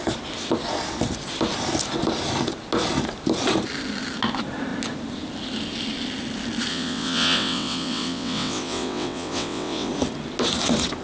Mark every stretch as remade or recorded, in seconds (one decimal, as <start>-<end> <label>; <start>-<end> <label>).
0.0-6.7 recorded; 6.7-9.9 remade; 9.9-11.0 recorded